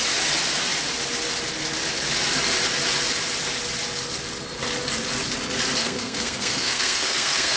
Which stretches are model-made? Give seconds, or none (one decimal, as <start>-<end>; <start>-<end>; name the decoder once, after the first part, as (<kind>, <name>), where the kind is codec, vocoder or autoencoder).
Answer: 5.8-7.6 (codec, SNAC)